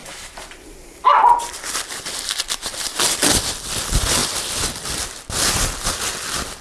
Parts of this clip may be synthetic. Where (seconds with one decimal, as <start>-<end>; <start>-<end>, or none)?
0.0-3.0